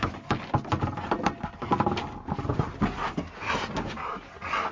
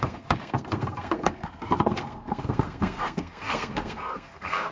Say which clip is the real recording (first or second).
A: first